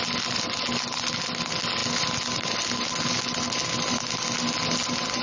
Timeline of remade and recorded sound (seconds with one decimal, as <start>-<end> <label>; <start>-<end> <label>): 0.0-5.2 recorded